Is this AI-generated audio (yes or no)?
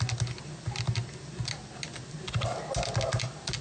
no